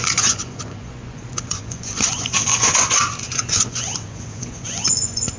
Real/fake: fake